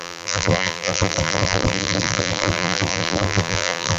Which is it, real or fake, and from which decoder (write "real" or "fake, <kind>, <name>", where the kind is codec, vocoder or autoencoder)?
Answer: fake, vocoder, BigVGAN v2